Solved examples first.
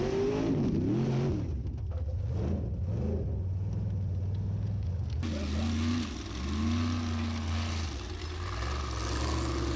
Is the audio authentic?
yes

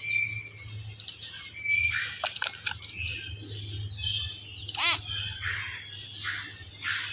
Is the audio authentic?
yes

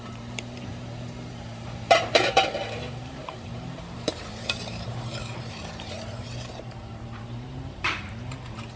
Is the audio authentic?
no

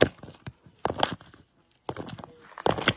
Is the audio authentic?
yes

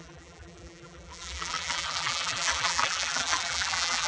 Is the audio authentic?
no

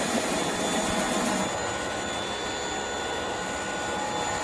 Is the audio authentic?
yes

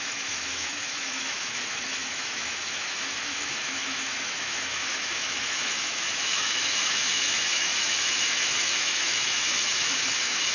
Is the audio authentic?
no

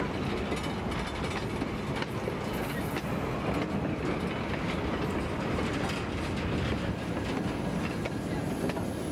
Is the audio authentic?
yes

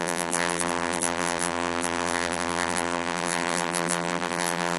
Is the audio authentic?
no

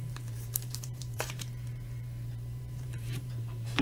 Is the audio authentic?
no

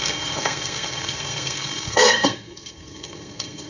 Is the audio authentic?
no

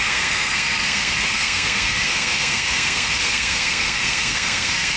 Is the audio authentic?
no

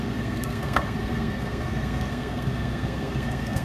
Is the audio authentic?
no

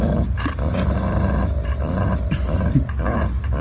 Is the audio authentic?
yes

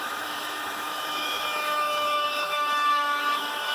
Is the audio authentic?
no